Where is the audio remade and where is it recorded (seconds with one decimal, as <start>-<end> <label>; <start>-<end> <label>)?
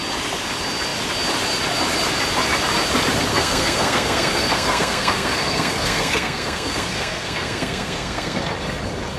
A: 0.0-3.3 recorded; 3.3-8.4 remade; 8.4-9.2 recorded